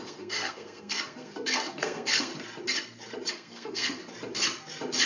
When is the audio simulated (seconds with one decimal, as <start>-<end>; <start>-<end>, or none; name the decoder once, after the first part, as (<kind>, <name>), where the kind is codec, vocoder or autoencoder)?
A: 0.0-2.3 (codec, SNAC); 3.3-4.0